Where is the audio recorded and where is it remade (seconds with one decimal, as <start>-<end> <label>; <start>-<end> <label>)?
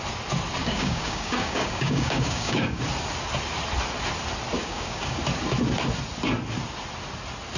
0.0-0.6 recorded; 0.6-2.8 remade; 2.8-4.6 recorded; 4.6-5.2 remade; 5.2-7.6 recorded